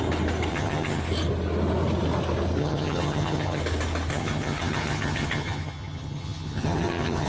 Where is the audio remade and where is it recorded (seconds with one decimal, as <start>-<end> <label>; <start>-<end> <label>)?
0.0-0.5 recorded; 0.5-1.0 remade; 1.0-2.6 recorded; 2.6-3.6 remade; 3.6-4.1 recorded; 4.1-7.3 remade

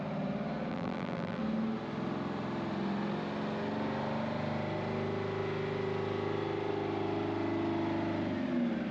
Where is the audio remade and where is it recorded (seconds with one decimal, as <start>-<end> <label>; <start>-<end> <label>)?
0.0-0.7 recorded; 0.7-1.4 remade; 1.4-8.9 recorded

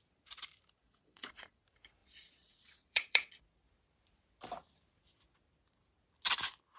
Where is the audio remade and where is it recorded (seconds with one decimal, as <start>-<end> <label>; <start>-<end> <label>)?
0.0-0.8 recorded; 0.8-1.6 remade; 1.6-2.0 recorded; 2.0-3.4 remade; 3.4-6.8 recorded

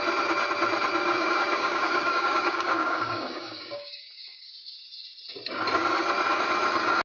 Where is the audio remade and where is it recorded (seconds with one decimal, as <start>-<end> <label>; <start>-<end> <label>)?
0.0-1.0 recorded; 1.0-4.5 remade; 4.5-7.0 recorded

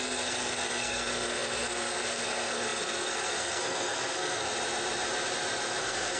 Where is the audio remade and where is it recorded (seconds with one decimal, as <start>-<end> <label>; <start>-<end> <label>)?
0.0-4.5 remade; 4.5-5.8 recorded; 5.8-6.2 remade

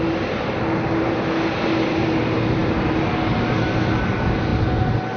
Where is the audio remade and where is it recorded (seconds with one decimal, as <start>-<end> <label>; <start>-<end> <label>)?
0.0-5.2 recorded

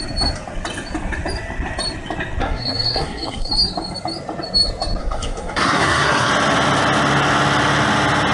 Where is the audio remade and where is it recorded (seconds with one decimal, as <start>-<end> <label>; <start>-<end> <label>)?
0.0-2.4 recorded; 2.4-3.5 remade; 3.5-5.0 recorded; 5.0-6.3 remade; 6.3-8.3 recorded

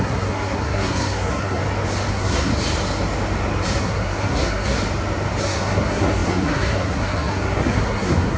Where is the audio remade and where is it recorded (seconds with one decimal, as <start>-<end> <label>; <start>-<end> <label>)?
0.0-1.6 remade; 1.6-2.1 recorded; 2.1-2.5 remade; 2.5-3.8 recorded; 3.8-4.8 remade; 4.8-5.4 recorded; 5.4-8.4 remade